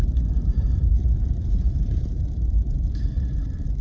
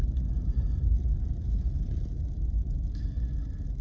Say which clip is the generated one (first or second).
first